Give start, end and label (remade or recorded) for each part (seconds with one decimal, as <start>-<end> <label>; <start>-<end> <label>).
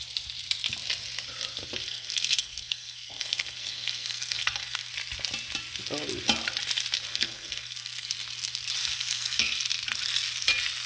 0.0-1.8 recorded; 1.8-4.9 remade; 4.9-7.1 recorded; 7.1-8.1 remade; 8.1-8.8 recorded; 8.8-9.6 remade; 9.6-10.9 recorded